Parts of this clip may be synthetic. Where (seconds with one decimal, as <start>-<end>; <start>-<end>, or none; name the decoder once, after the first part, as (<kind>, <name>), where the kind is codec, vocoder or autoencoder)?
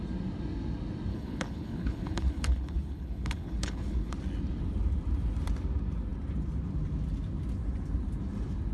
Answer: 1.1-4.1 (codec, HILCodec)